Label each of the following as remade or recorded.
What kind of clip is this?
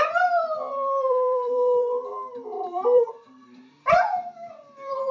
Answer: remade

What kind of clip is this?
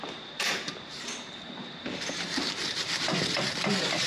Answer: remade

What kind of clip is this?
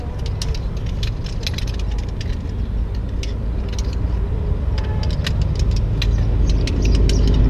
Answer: recorded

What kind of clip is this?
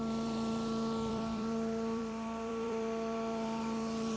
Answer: remade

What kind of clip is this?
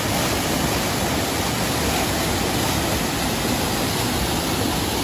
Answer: recorded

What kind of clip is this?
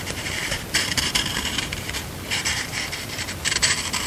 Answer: remade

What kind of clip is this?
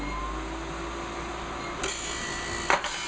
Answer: recorded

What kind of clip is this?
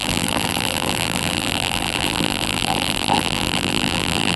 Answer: remade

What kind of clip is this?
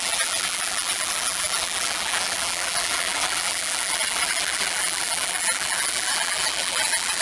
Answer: remade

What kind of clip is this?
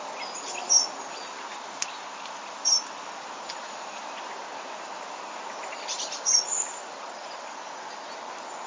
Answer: recorded